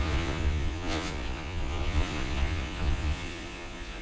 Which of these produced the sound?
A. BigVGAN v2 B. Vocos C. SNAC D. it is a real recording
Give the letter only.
B